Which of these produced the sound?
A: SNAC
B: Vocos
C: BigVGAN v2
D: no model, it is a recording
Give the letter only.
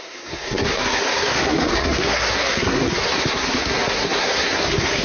A